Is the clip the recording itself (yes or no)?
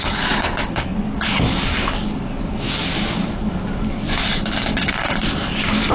no